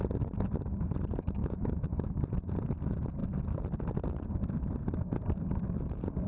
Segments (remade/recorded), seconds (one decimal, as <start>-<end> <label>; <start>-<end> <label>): 0.0-1.4 recorded; 1.4-2.2 remade; 2.2-6.3 recorded